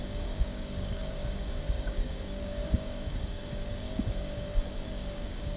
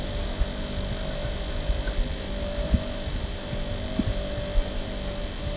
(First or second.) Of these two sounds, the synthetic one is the first